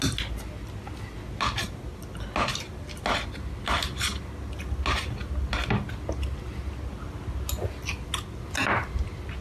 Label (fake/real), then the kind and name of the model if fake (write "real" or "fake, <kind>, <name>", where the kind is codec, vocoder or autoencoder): real